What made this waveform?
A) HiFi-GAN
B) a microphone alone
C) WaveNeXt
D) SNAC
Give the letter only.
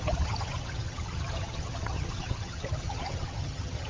A